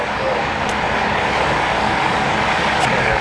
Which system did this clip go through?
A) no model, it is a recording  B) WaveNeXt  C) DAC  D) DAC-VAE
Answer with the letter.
C